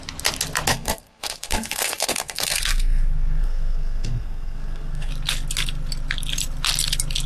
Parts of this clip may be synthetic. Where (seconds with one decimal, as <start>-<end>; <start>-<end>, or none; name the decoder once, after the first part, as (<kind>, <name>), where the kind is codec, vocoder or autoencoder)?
0.7-5.1 (codec, SNAC)